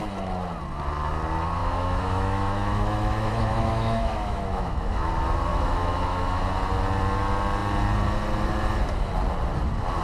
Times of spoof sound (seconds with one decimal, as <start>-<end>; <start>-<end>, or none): 1.6-5.1; 5.5-6.4

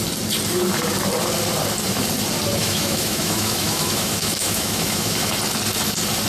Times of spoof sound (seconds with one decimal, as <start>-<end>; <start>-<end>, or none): 2.6-5.3

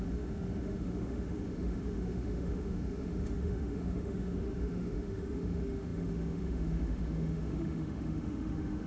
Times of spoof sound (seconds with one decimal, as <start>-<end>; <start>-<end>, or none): 0.0-8.9

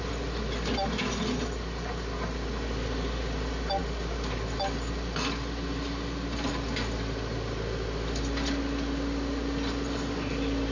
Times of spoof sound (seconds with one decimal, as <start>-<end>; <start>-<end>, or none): none

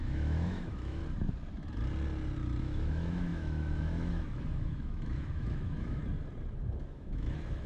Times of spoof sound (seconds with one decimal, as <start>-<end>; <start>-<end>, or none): 0.0-1.0; 2.6-6.0; 6.8-7.7